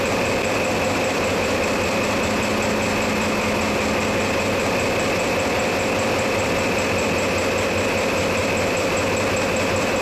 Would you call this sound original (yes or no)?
yes